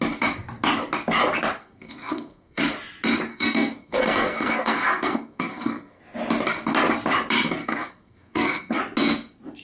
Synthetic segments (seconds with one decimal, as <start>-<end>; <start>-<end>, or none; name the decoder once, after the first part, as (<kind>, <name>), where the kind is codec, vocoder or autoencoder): 1.6-2.6 (codec, SNAC); 3.3-6.0; 7.6-8.8